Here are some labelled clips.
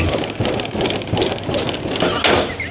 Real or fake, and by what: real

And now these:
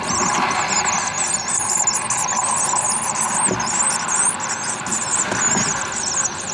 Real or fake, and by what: real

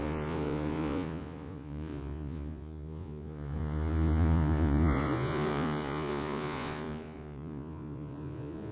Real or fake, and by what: fake, vocoder, Vocos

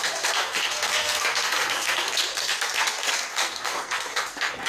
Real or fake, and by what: fake, codec, SNAC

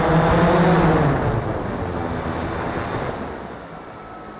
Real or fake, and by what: real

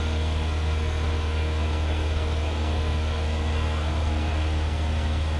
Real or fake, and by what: fake, codec, SNAC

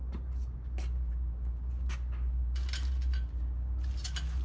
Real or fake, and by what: real